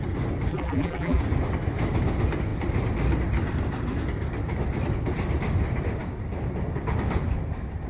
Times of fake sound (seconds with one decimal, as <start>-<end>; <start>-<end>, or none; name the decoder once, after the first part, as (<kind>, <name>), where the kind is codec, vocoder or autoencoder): 0.5-1.2 (vocoder, BigVGAN v2)